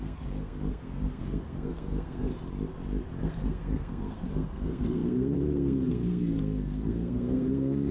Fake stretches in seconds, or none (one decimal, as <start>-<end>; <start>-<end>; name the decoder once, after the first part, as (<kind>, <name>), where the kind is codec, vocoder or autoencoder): 0.0-2.3 (codec, SNAC); 3.2-7.9